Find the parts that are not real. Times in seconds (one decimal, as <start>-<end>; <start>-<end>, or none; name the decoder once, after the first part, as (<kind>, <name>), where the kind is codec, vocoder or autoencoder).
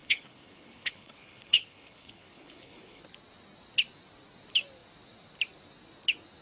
0.0-3.0 (codec, HILCodec)